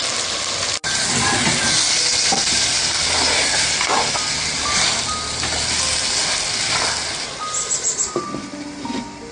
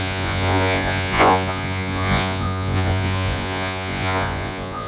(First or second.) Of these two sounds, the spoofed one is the second